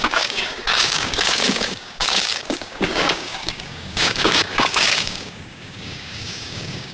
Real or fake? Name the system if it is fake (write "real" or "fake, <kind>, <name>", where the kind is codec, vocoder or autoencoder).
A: fake, codec, DAC